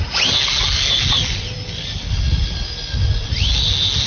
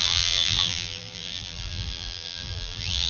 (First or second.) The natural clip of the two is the first